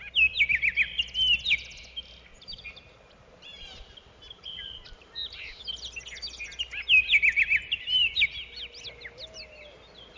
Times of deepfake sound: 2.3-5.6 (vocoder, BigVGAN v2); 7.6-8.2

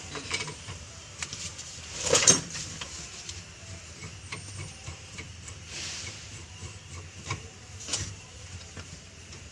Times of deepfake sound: 0.0-4.0 (vocoder, BigVGAN v2); 4.6-9.5

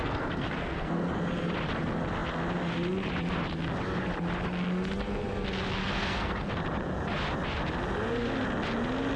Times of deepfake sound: 0.0-1.2 (codec, SNAC); 5.8-6.5